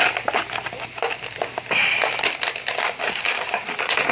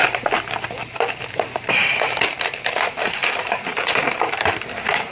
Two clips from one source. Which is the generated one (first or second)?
second